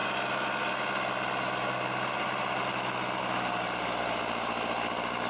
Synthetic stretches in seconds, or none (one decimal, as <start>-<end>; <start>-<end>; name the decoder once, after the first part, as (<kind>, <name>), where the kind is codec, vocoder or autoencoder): none